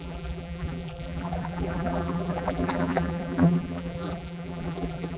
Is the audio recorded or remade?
remade